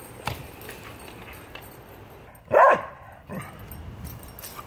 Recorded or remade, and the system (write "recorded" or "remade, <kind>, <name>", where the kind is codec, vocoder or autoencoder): recorded